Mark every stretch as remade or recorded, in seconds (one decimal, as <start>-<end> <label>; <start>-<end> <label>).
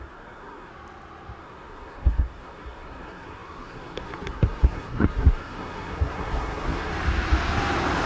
0.0-0.7 remade; 0.7-1.4 recorded; 1.4-6.9 remade; 6.9-8.1 recorded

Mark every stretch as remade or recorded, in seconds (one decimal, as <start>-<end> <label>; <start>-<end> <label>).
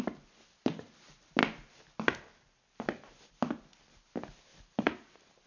0.0-4.5 recorded; 4.5-5.5 remade